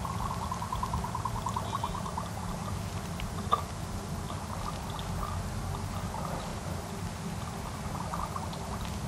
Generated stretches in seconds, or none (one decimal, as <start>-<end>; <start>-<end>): none

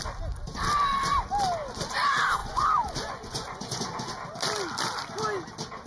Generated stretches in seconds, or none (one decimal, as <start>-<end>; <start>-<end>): 2.4-4.1

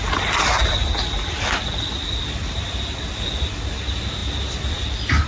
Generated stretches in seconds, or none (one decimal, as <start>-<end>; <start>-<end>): none

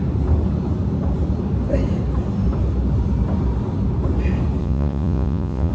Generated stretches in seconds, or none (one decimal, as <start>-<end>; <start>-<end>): 4.6-5.7

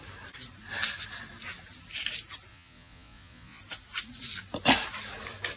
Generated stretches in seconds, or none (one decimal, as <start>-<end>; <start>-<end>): 2.5-3.6